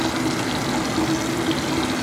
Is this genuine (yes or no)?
yes